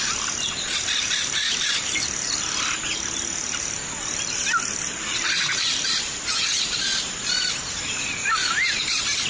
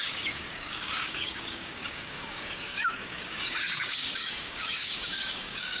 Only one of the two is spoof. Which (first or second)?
second